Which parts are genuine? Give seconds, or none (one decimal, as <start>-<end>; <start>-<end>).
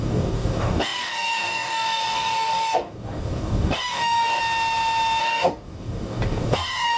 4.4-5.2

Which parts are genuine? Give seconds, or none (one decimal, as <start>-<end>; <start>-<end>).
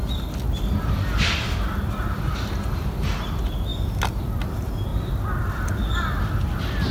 0.0-6.9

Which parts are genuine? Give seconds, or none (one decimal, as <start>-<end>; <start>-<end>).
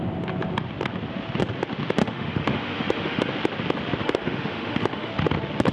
0.0-2.0; 3.3-4.0; 5.1-5.7